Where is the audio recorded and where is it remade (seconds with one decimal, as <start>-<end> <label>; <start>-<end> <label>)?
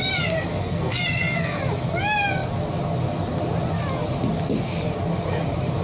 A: 0.0-0.6 recorded; 0.6-1.6 remade; 1.6-5.8 recorded